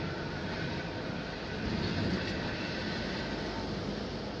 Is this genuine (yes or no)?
yes